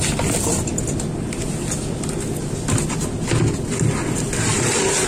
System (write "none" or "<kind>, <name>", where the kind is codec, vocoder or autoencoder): none